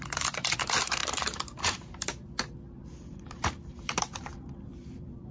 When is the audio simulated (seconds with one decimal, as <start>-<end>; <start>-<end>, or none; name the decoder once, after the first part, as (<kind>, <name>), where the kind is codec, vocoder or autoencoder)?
0.0-5.3 (vocoder, BigVGAN v2)